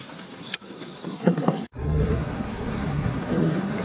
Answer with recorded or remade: remade